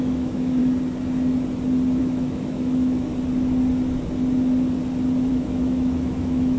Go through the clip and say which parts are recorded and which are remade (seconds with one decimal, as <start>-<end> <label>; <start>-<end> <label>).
0.0-0.6 remade; 0.6-2.0 recorded; 2.0-3.1 remade; 3.1-5.3 recorded; 5.3-6.6 remade